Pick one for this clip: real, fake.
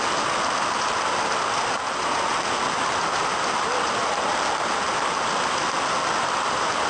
real